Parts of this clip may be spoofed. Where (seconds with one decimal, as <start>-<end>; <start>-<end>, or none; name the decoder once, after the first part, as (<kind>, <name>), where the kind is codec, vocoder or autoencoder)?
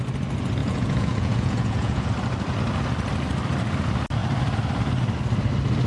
0.6-2.1 (vocoder, Vocos)